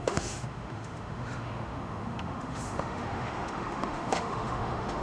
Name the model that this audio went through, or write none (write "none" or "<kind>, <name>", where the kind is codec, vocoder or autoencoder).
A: autoencoder, DAC-VAE